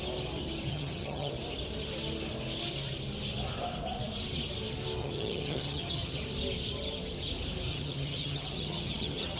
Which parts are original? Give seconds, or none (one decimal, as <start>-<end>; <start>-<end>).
0.0-0.7; 1.3-5.0; 6.2-7.7